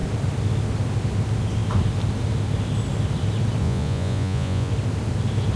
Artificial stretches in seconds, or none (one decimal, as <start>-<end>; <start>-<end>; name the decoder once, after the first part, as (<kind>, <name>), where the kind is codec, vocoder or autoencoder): 3.6-4.7 (vocoder, Vocos)